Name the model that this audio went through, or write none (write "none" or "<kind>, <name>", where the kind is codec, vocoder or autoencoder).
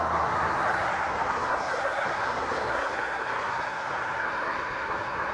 codec, SNAC